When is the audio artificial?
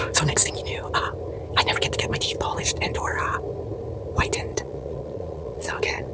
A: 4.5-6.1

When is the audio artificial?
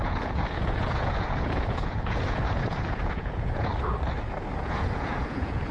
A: 0.0-3.7; 4.6-5.7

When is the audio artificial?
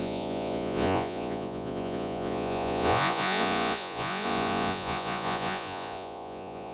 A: 0.0-6.7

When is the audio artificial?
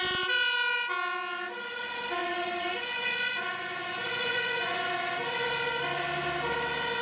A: 2.2-4.9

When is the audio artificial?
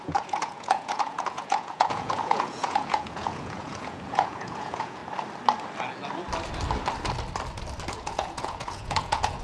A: 0.0-5.0; 7.9-9.4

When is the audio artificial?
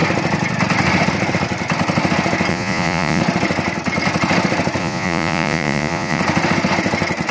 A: 2.5-3.2; 4.8-6.2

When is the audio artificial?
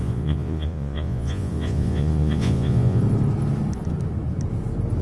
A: 0.0-3.0